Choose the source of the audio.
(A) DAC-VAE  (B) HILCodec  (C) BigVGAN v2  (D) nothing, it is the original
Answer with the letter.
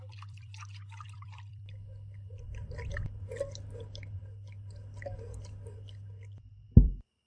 C